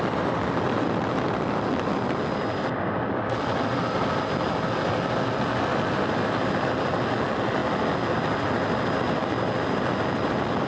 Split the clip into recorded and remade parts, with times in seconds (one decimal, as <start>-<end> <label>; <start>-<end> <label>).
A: 0.0-10.7 recorded